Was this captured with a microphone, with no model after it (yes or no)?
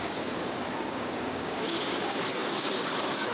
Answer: no